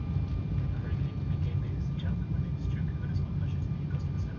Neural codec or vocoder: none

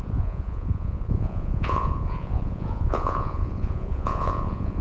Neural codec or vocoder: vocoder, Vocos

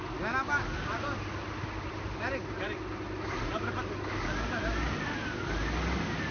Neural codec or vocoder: none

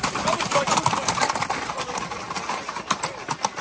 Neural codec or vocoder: none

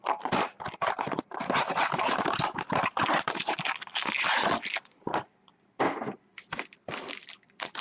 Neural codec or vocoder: vocoder, BigVGAN v2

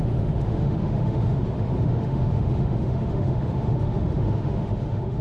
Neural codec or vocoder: autoencoder, DAC-VAE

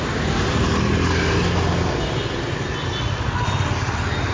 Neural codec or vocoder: none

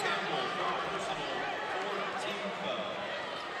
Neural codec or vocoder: none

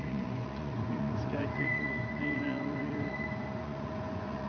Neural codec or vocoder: vocoder, Vocos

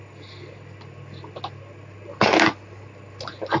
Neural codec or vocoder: none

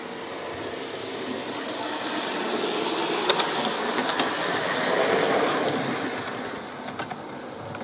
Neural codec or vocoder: none